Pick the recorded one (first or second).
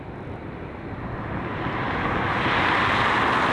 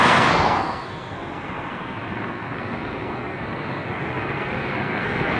first